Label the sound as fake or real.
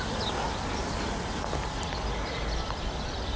real